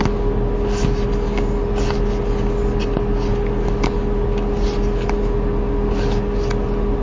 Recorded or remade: recorded